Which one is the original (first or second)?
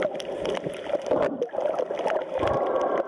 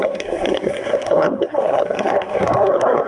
first